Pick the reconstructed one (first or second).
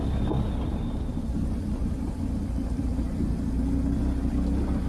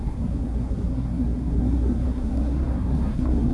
second